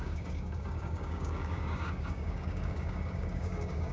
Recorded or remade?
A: remade